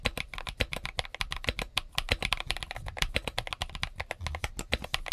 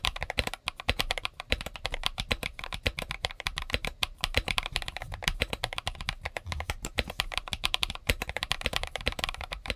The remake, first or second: second